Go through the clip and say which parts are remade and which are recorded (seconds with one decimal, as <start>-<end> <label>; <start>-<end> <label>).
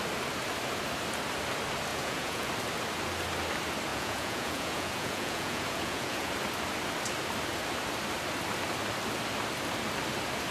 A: 0.0-1.9 recorded; 1.9-2.5 remade; 2.5-3.9 recorded; 3.9-6.3 remade; 6.3-10.5 recorded